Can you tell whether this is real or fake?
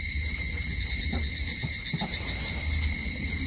real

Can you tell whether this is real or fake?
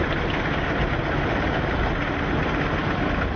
real